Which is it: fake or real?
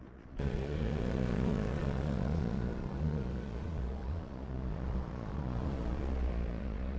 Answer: fake